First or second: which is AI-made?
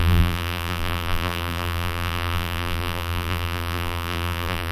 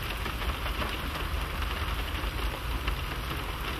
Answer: first